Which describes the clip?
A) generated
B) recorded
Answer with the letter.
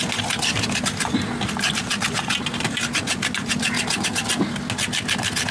B